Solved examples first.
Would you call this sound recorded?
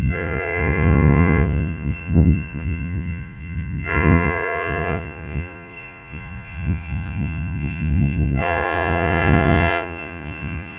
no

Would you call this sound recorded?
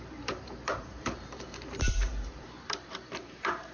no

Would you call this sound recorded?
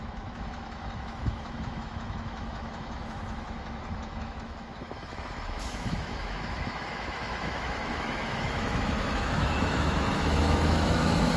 no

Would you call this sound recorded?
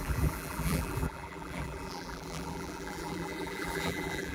no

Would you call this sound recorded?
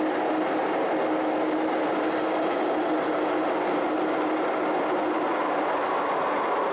yes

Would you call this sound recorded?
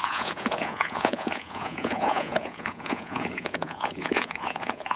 no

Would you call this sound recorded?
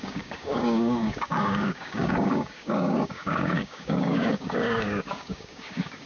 no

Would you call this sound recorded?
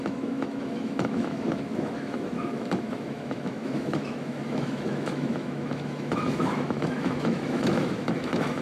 no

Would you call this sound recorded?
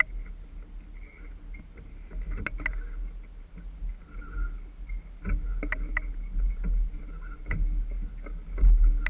yes